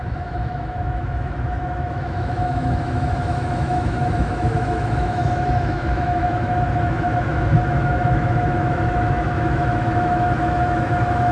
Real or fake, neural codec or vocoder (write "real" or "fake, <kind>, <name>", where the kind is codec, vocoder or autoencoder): fake, autoencoder, DAC-VAE